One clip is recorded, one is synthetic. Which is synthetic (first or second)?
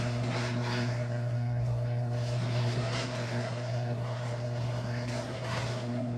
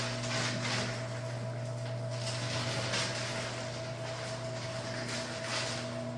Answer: first